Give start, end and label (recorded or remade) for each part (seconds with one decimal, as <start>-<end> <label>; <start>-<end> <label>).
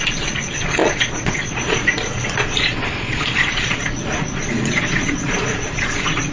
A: 0.0-6.3 remade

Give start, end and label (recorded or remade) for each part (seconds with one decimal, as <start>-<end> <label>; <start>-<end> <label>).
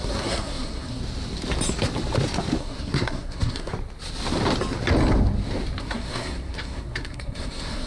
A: 0.0-1.0 remade; 1.0-2.6 recorded; 2.6-3.7 remade; 3.7-5.8 recorded; 5.8-7.9 remade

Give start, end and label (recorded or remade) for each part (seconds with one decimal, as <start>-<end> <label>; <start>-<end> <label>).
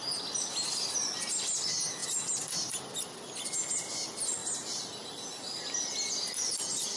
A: 0.0-7.0 recorded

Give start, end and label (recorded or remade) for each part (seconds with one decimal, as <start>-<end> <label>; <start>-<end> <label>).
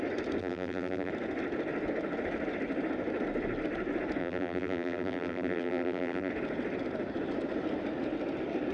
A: 0.0-0.4 recorded; 0.4-1.1 remade; 1.1-4.2 recorded; 4.2-6.3 remade; 6.3-8.7 recorded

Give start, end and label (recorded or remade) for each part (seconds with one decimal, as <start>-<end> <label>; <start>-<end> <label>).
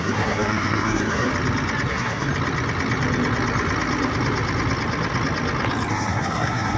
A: 0.0-1.3 remade; 1.3-1.9 recorded; 1.9-2.3 remade; 2.3-5.9 recorded; 5.9-6.8 remade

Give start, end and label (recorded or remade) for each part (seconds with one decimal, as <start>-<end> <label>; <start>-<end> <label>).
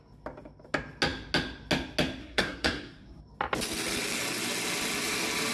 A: 0.0-2.2 recorded; 2.2-3.2 remade; 3.2-5.5 recorded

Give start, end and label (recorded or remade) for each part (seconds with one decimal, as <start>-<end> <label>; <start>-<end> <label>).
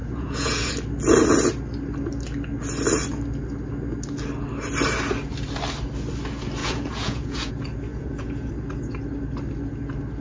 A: 0.0-0.7 remade; 0.7-6.6 recorded; 6.6-7.5 remade; 7.5-7.9 recorded; 7.9-8.5 remade; 8.5-10.2 recorded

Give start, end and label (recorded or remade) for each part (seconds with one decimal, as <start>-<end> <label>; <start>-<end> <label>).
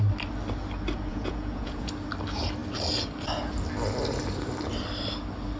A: 0.0-1.1 recorded; 1.1-1.9 remade; 1.9-5.6 recorded